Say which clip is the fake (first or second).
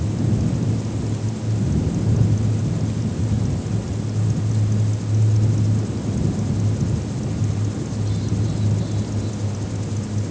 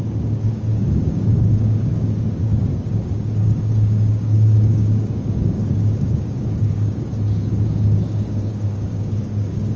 second